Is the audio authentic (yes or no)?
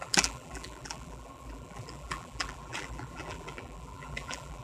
no